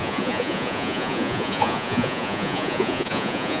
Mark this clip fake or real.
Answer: fake